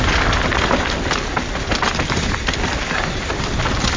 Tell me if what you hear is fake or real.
real